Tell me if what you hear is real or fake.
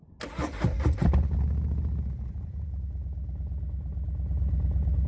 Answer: real